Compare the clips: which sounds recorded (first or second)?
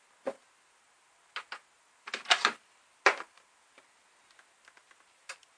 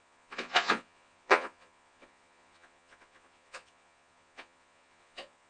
first